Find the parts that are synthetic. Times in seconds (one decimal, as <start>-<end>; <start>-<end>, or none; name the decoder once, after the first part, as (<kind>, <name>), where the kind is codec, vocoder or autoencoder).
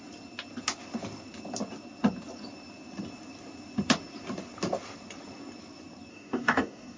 6.1-7.0 (codec, DAC)